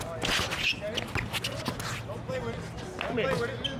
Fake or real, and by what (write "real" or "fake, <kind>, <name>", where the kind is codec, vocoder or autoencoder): real